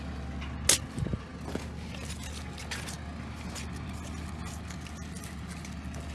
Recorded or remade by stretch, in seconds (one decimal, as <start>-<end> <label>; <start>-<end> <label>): 0.0-6.1 recorded